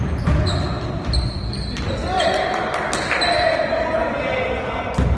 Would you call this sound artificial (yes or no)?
no